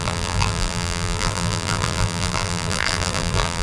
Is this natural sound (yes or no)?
no